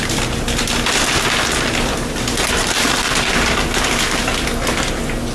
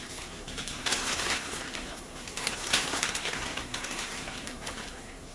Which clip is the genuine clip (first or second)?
first